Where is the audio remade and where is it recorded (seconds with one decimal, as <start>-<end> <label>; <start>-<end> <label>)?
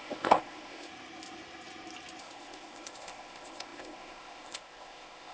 0.0-0.9 remade; 0.9-2.2 recorded; 2.2-5.3 remade